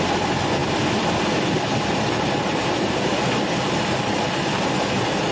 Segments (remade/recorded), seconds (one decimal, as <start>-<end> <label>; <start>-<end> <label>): 0.0-5.3 recorded